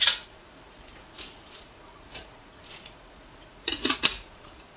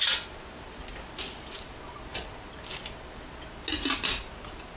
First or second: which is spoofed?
first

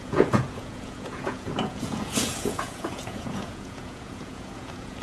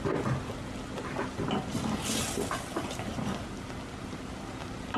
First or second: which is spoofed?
first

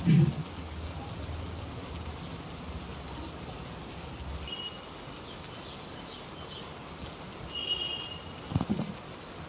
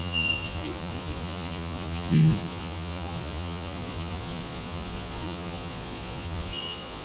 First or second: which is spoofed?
second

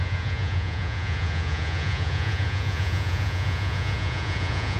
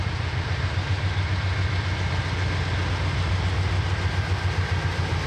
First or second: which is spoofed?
first